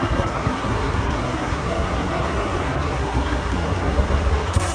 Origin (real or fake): fake